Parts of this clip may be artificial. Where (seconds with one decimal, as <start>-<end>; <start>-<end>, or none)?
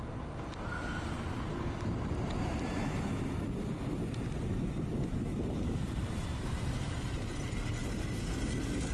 5.3-6.7